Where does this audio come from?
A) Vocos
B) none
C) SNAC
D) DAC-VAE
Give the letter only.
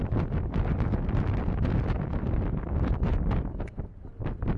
B